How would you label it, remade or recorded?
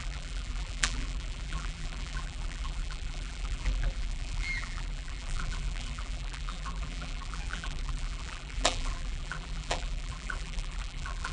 remade